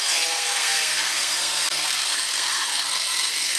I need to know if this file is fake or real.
fake